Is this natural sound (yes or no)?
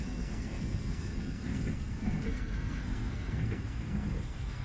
no